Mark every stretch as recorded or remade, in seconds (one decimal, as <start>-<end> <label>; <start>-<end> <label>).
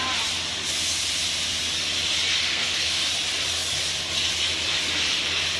0.0-2.5 recorded; 2.5-3.0 remade; 3.0-5.6 recorded